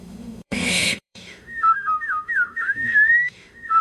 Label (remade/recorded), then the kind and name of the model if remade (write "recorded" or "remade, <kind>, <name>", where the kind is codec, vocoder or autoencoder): remade, autoencoder, DAC-VAE